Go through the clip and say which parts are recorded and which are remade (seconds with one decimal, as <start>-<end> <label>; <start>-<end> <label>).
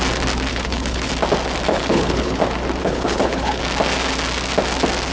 0.0-0.5 recorded; 0.5-1.1 remade; 1.1-1.7 recorded; 1.7-2.4 remade; 2.4-2.8 recorded; 2.8-3.6 remade; 3.6-5.1 recorded